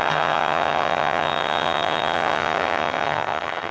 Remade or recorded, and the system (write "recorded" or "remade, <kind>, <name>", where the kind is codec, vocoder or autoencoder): remade, vocoder, HiFi-GAN